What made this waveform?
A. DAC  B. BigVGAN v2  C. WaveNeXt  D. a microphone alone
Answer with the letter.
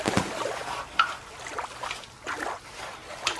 D